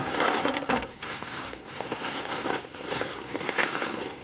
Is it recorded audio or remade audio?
remade